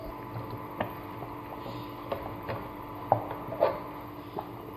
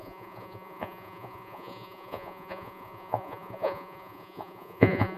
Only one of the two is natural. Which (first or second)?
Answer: first